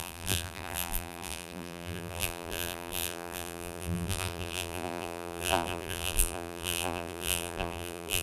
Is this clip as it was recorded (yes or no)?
no